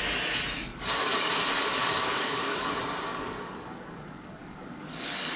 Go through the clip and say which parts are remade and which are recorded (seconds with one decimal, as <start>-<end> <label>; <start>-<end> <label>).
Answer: 0.0-0.7 recorded; 0.7-1.3 remade; 1.3-1.8 recorded; 1.8-2.7 remade; 2.7-3.1 recorded; 3.1-5.4 remade